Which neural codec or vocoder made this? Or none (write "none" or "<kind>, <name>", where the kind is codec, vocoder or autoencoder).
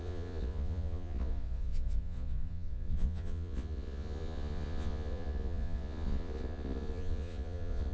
vocoder, Vocos